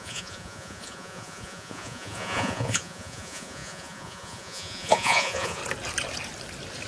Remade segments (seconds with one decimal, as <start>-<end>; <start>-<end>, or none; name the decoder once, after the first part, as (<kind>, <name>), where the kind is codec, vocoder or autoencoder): 0.0-5.6 (vocoder, Vocos)